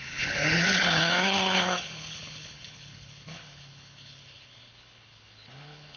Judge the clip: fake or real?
fake